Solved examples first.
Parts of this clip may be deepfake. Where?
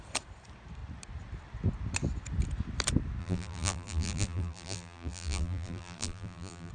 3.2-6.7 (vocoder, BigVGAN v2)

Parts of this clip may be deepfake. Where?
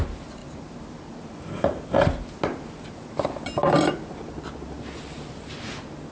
0.4-3.7 (vocoder, BigVGAN v2)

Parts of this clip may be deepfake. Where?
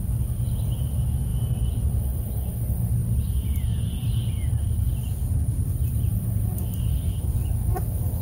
1.3-2.0 (vocoder, BigVGAN v2); 3.0-7.3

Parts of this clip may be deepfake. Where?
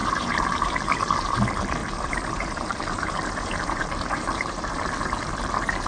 0.0-0.7 (vocoder, BigVGAN v2); 1.8-4.8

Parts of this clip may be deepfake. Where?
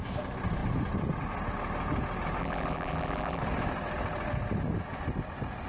2.4-3.4 (vocoder, BigVGAN v2)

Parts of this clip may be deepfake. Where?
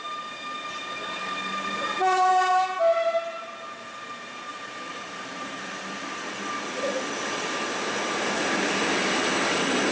2.3-3.5 (vocoder, BigVGAN v2); 4.9-5.7